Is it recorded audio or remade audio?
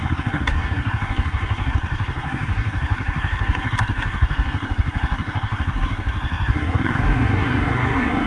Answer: remade